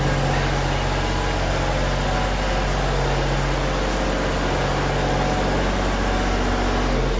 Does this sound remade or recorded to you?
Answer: recorded